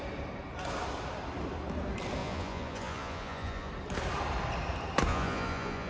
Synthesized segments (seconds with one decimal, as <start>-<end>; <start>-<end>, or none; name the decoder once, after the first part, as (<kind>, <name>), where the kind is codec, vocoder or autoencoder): 2.2-3.7 (vocoder, Vocos); 5.1-5.9